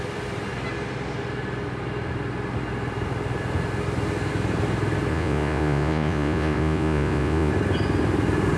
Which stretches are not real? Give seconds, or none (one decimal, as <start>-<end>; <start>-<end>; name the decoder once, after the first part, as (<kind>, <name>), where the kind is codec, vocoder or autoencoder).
5.1-7.5 (vocoder, Vocos)

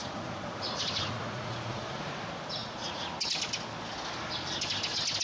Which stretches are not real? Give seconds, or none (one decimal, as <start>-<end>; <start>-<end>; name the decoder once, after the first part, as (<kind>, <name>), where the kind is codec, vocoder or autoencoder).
0.0-2.2 (vocoder, Vocos); 2.6-3.1

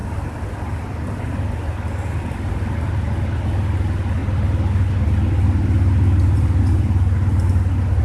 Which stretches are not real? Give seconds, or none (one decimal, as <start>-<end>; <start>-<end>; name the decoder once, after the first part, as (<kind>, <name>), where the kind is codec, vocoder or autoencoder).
none

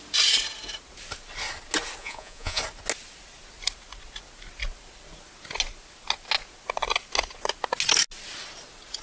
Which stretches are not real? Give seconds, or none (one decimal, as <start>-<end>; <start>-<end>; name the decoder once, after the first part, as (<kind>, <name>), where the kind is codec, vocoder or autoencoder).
2.0-2.6 (vocoder, Vocos)